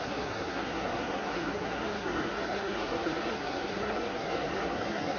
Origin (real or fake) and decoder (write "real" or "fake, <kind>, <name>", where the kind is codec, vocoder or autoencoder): fake, codec, SNAC